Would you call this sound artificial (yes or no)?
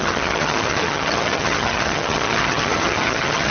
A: yes